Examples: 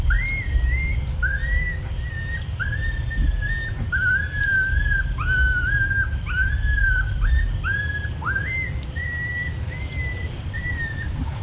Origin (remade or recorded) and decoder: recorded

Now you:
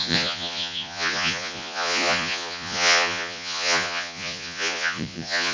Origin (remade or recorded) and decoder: remade, vocoder, Vocos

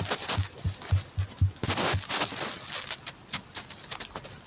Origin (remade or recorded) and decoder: recorded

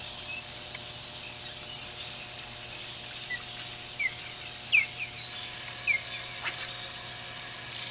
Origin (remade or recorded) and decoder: recorded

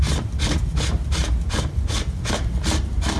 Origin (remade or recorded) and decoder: recorded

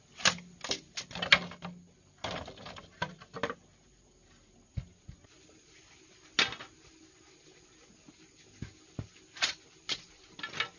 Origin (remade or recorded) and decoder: recorded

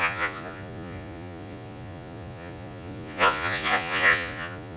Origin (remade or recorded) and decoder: remade, vocoder, Vocos